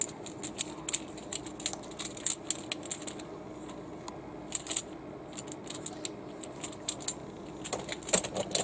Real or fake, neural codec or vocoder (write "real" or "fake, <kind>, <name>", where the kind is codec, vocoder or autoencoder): real